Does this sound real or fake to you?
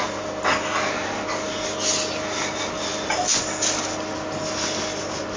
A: real